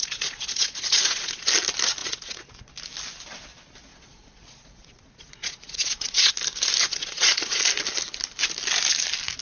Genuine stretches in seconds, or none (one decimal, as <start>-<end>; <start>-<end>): 1.5-2.0; 2.7-3.9; 6.3-6.8; 7.6-9.4